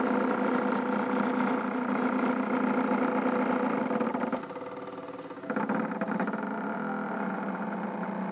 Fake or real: real